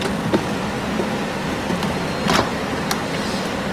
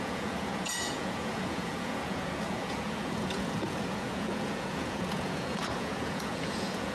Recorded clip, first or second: first